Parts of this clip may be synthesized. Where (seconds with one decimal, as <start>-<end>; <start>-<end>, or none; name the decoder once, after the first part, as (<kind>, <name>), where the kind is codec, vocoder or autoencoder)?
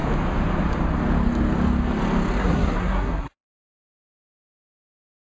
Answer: 2.4-4.1 (codec, SNAC)